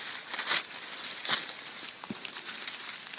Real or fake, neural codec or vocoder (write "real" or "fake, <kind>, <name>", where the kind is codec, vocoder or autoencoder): real